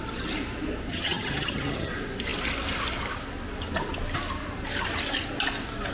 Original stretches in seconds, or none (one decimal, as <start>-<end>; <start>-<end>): 0.0-0.9; 1.9-5.9